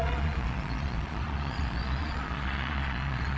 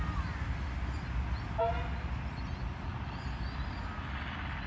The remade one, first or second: first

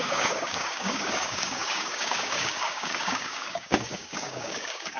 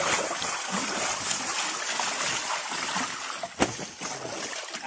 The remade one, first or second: first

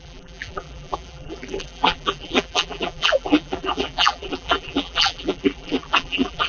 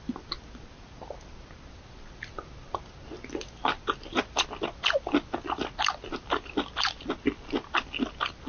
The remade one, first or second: first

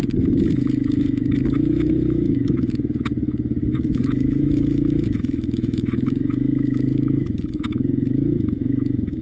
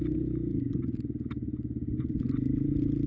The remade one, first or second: first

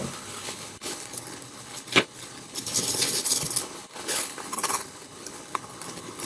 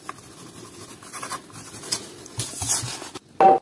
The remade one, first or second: first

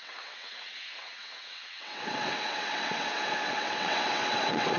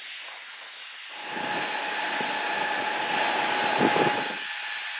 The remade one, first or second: first